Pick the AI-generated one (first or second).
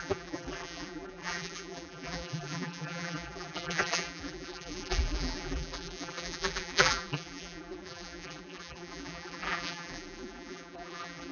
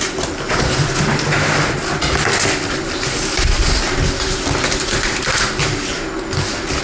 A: first